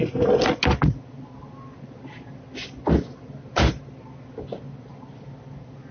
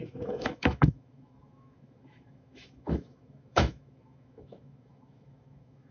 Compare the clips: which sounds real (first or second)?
first